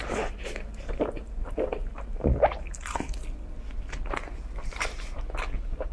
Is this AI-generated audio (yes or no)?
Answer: no